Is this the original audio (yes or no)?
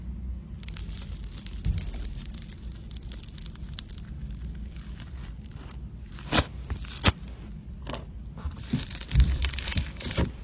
yes